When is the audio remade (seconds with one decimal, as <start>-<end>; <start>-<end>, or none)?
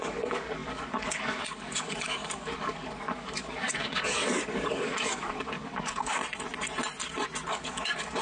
0.0-6.2; 7.5-8.2